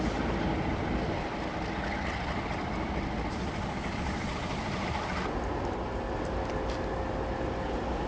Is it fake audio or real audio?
real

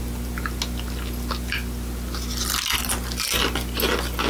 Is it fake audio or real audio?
real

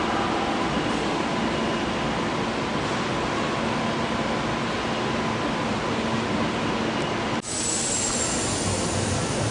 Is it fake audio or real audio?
real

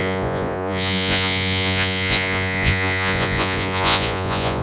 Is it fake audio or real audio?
fake